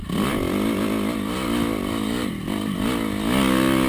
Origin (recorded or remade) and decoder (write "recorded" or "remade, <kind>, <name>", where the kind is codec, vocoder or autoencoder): recorded